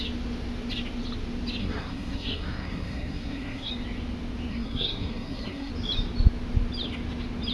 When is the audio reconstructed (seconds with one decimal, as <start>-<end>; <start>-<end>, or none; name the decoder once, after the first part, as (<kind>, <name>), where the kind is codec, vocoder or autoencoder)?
1.6-3.7 (codec, SNAC); 4.5-5.7